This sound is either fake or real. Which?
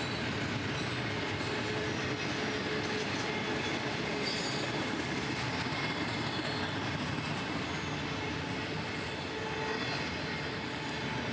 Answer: real